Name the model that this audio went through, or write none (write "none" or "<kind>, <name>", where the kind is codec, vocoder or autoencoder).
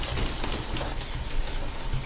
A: none